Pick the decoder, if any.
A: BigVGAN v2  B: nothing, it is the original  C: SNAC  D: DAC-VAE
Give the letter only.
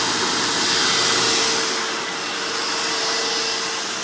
B